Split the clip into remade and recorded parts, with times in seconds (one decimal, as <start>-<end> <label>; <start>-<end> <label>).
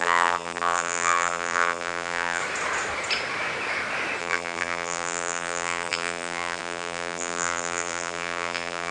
0.0-2.4 remade; 2.4-4.2 recorded; 4.2-8.9 remade